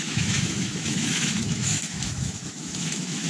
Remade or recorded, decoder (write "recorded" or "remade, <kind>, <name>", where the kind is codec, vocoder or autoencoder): remade, autoencoder, DAC-VAE